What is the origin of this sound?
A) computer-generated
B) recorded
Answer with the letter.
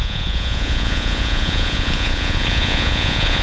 A